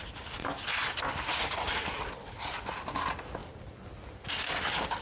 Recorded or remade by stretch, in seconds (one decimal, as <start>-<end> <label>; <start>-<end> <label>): 0.0-5.0 recorded